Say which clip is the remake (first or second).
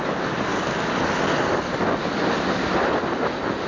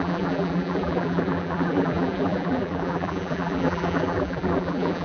second